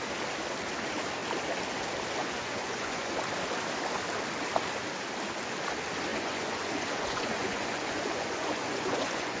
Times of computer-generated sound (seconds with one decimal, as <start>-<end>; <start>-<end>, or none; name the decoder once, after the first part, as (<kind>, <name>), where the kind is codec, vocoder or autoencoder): 2.2-3.2 (vocoder, Vocos); 6.1-9.4